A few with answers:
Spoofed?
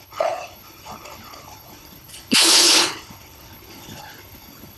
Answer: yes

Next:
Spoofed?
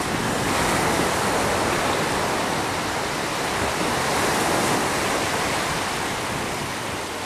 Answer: no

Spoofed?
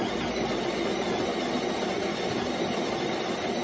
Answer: no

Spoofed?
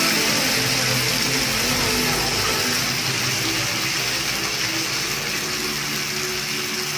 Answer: no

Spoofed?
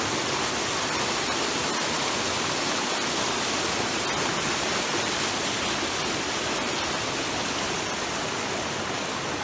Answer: no